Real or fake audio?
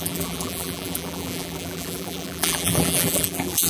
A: fake